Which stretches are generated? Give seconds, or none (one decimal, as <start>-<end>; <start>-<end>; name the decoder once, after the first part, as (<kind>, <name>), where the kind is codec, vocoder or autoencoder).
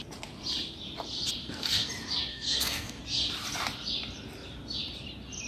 1.4-1.9 (codec, SNAC); 2.3-3.0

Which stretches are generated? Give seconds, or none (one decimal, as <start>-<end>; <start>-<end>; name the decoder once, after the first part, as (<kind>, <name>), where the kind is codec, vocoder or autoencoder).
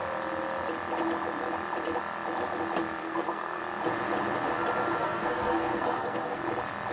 3.0-3.6 (codec, SNAC); 5.0-6.4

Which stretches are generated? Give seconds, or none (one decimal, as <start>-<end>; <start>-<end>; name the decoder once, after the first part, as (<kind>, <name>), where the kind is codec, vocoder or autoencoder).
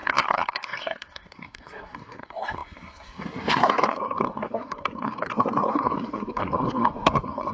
0.0-7.5 (codec, SNAC)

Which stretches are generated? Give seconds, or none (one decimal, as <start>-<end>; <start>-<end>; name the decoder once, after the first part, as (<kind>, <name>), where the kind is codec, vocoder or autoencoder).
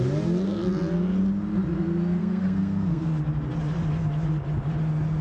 2.2-3.1 (codec, SNAC)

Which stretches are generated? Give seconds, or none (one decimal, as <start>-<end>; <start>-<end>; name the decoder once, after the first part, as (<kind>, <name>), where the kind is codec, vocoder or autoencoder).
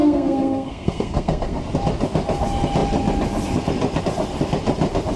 0.0-1.6 (codec, SNAC)